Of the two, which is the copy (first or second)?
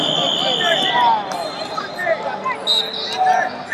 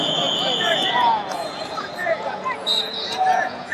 second